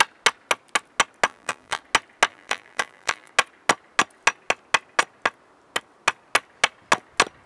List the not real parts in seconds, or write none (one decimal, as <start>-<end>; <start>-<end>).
1.3-1.8; 2.3-3.3

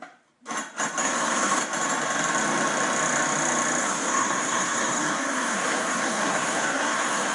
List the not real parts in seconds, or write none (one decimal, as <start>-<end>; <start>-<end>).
1.0-1.6; 3.8-7.3

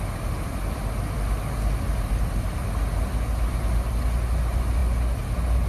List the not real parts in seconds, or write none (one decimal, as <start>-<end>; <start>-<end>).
none

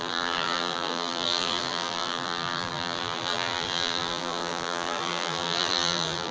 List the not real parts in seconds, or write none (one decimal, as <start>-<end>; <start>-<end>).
0.0-6.3

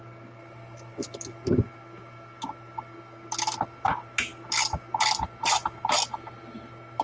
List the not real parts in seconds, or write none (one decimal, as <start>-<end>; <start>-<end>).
none

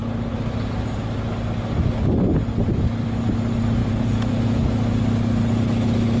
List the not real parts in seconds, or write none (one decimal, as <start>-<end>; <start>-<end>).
3.8-4.6

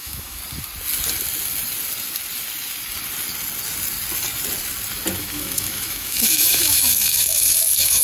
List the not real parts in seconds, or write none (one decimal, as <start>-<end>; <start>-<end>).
0.0-0.4; 5.2-8.0